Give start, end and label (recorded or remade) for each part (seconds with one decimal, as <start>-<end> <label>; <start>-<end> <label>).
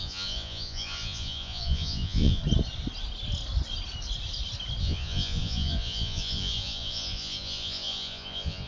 0.0-2.4 remade; 2.4-4.8 recorded; 4.8-8.7 remade